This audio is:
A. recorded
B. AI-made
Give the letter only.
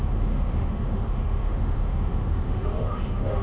B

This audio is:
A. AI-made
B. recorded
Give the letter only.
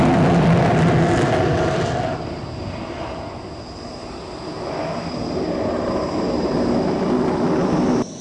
B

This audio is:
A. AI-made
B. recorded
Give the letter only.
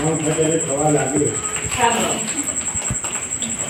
B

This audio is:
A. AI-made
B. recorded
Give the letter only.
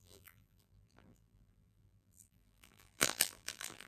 A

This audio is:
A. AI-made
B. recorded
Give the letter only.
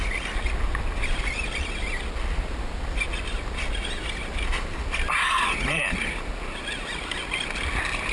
B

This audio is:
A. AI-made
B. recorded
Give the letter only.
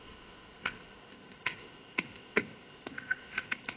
A